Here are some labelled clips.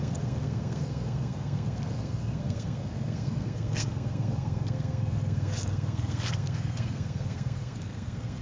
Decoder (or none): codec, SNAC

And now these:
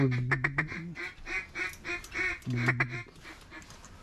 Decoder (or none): none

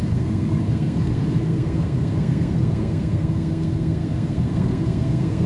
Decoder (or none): codec, SNAC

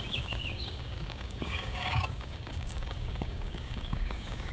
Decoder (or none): codec, DAC